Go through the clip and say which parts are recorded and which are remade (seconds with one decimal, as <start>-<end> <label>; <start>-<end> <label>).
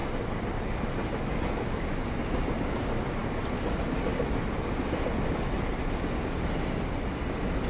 0.0-7.7 recorded